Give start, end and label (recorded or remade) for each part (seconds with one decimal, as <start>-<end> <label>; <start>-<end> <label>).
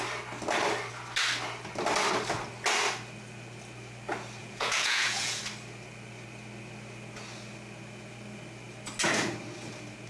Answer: 0.0-4.4 recorded; 4.4-5.4 remade; 5.4-10.1 recorded